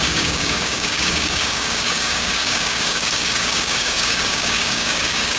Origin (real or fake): fake